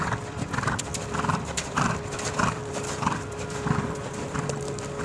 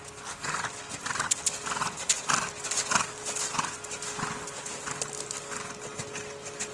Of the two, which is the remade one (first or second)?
first